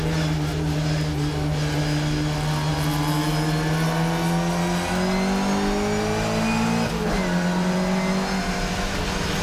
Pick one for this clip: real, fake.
real